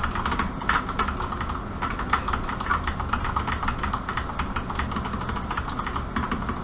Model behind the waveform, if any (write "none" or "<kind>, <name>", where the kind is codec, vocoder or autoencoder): none